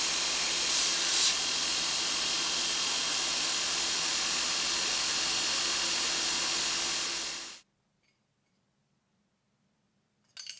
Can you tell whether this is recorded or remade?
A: recorded